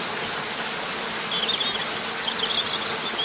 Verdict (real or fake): real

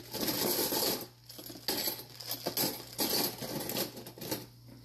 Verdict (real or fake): real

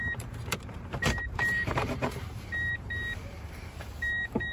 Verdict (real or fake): fake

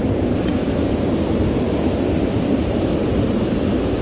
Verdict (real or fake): real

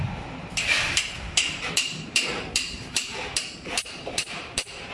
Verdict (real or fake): fake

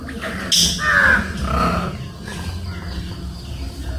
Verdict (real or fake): real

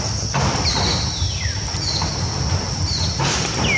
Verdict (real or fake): real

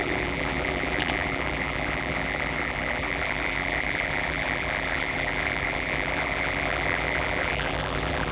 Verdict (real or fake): fake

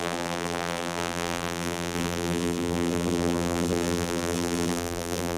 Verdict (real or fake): fake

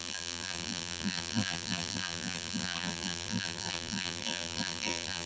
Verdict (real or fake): fake